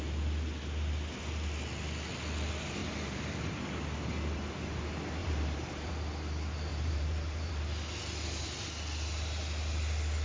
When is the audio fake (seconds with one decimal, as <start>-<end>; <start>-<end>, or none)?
2.8-3.5; 5.2-5.9; 6.7-7.6